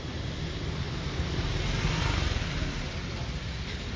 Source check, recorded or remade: recorded